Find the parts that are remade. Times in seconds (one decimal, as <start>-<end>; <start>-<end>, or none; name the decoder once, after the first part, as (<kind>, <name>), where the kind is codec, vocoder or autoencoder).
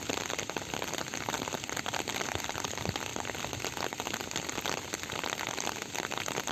none